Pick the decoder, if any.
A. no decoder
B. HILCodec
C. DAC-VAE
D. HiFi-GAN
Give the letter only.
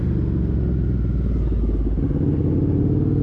A